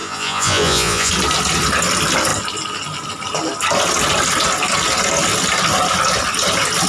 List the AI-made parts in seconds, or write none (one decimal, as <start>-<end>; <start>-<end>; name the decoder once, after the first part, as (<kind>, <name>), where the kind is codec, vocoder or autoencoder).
0.0-1.1 (vocoder, Vocos)